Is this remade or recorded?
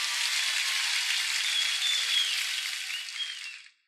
recorded